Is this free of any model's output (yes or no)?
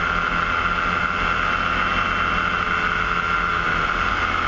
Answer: yes